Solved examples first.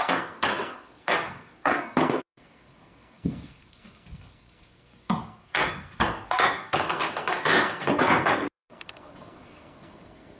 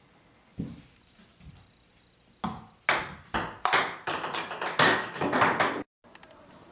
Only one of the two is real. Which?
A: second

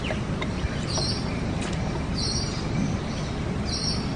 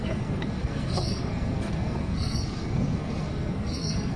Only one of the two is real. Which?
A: first